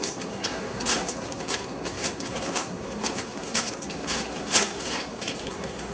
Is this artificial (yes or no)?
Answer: yes